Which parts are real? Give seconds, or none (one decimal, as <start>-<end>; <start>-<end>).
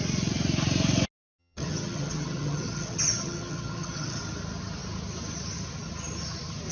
0.0-1.4; 4.2-6.7